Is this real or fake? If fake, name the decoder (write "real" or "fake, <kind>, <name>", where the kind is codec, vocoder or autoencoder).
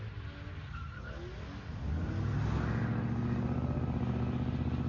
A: real